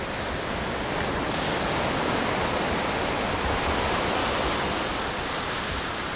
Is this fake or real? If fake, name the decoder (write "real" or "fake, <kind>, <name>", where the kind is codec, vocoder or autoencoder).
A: real